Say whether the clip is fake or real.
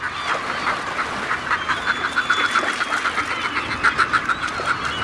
real